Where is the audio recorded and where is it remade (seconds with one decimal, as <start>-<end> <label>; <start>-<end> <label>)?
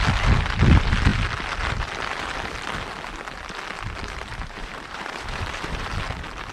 0.0-4.3 recorded; 4.3-5.9 remade; 5.9-6.5 recorded